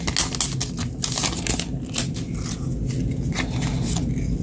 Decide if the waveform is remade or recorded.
recorded